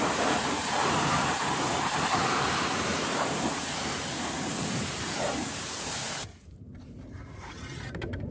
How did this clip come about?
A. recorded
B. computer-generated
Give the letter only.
B